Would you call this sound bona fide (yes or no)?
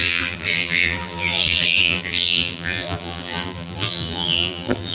no